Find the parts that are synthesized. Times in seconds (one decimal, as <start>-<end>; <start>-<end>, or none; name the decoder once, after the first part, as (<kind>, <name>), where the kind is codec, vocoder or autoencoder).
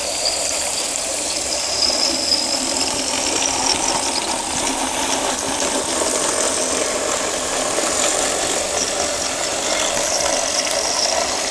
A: 0.0-3.5 (vocoder, BigVGAN v2)